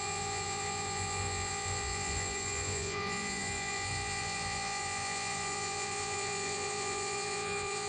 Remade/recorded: remade